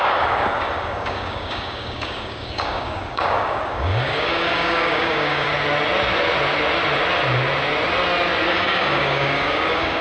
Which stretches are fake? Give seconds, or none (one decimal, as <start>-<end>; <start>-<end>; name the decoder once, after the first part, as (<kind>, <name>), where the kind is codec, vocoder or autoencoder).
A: 0.0-5.5 (codec, DAC); 8.5-10.0